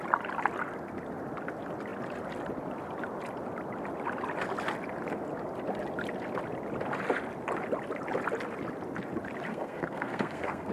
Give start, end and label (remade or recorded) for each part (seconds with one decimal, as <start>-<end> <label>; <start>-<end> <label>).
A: 0.0-9.5 recorded; 9.5-10.7 remade